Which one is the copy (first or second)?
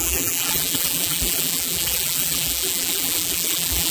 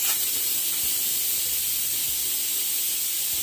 first